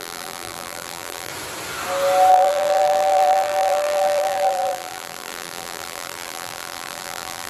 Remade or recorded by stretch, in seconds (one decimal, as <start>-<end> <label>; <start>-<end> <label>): 0.0-1.3 remade; 1.3-2.3 recorded; 2.3-7.5 remade